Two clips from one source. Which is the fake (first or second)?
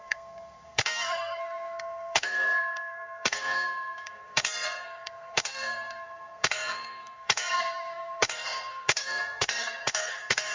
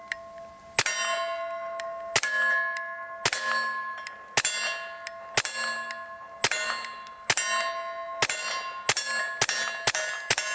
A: first